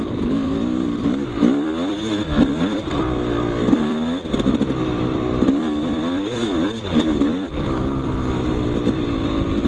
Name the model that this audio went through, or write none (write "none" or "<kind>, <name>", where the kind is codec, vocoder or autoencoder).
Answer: vocoder, BigVGAN v2